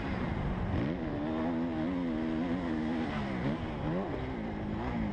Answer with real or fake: real